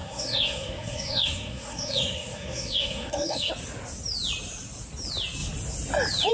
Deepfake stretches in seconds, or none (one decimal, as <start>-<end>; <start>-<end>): 0.0-3.5